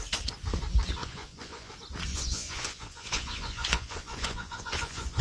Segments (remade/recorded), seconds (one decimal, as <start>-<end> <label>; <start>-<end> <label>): 0.0-1.0 recorded; 1.0-1.7 remade; 1.7-2.1 recorded; 2.1-5.2 remade